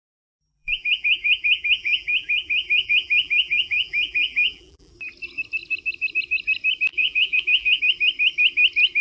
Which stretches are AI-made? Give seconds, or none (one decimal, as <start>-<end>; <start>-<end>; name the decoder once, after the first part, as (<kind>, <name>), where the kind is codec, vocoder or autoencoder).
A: 0.5-4.9 (vocoder, BigVGAN v2); 6.9-7.8